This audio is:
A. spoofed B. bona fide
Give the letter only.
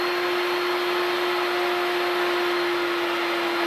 B